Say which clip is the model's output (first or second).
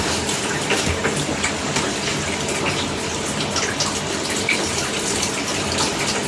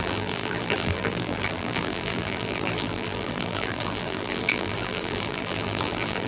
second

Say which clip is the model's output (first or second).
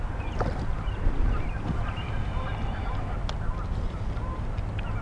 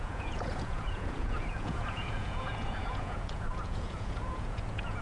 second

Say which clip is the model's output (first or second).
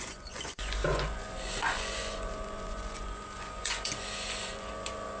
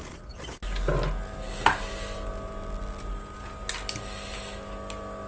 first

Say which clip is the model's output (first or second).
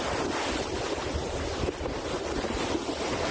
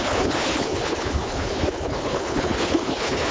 second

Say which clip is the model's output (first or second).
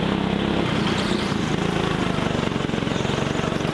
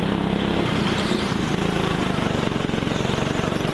second